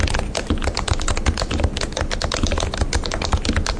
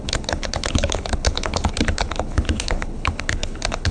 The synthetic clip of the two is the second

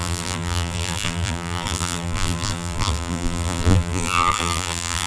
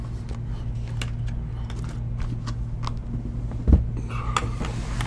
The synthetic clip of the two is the first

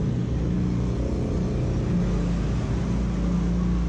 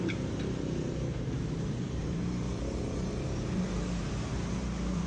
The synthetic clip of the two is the second